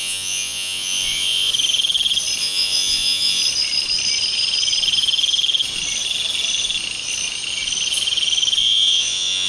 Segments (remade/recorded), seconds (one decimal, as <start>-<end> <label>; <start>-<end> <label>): 0.0-1.5 remade; 1.5-2.4 recorded; 2.4-3.4 remade; 3.4-8.6 recorded; 8.6-9.5 remade